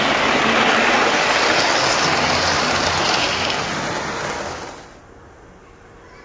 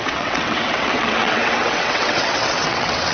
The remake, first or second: second